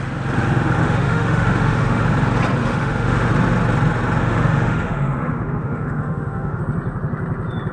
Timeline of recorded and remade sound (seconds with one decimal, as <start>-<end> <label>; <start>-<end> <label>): 0.0-0.8 recorded; 0.8-2.0 remade; 2.0-2.6 recorded; 2.6-3.3 remade; 3.3-4.2 recorded; 4.2-6.6 remade; 6.6-7.7 recorded